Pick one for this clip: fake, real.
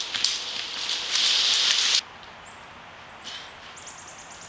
real